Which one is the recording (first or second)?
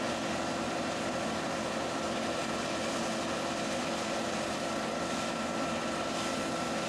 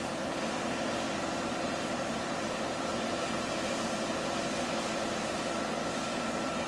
first